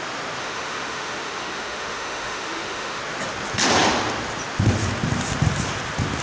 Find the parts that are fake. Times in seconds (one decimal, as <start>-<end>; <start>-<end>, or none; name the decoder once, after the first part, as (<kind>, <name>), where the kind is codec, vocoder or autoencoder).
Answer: 0.4-3.0 (autoencoder, DAC-VAE)